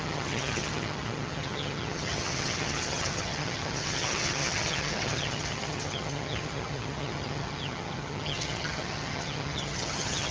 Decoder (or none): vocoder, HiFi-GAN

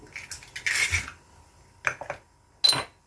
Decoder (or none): none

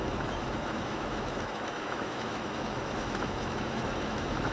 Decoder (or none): autoencoder, DAC-VAE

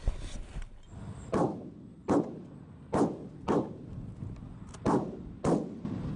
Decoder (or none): none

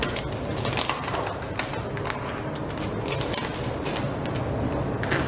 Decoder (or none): none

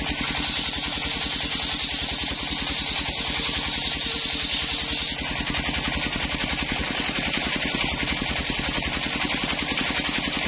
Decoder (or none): none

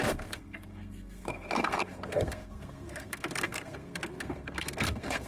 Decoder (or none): codec, SNAC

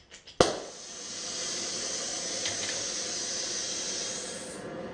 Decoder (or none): none